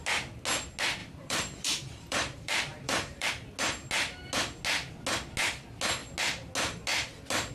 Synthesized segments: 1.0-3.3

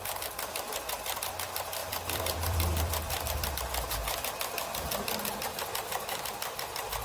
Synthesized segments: 1.8-3.5

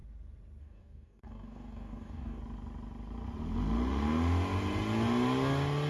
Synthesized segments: 0.6-2.4

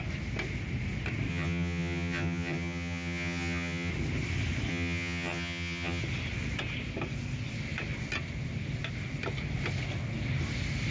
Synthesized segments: 1.3-3.9; 4.7-6.0

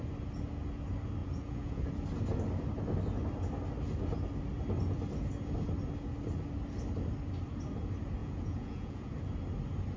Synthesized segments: 1.2-1.9; 8.2-9.1

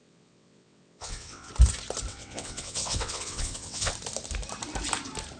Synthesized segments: 0.0-1.5; 2.1-3.9

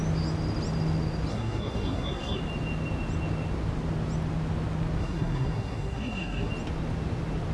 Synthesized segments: 1.3-2.4; 5.0-6.5